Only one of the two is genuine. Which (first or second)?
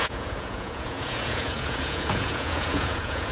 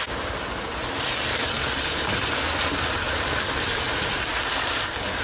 second